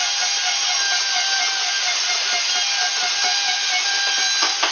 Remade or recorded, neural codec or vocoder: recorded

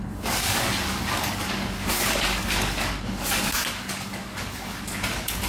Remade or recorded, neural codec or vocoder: remade, codec, DAC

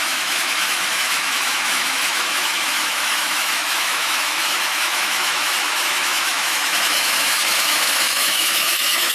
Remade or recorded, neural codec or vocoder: remade, autoencoder, DAC-VAE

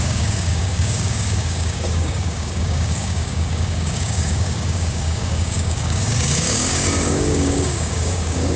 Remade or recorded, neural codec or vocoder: remade, codec, DAC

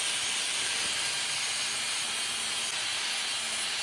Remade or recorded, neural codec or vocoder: recorded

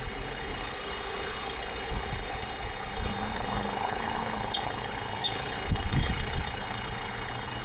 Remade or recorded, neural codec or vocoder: remade, codec, HILCodec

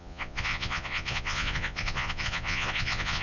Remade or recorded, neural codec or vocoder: remade, vocoder, Vocos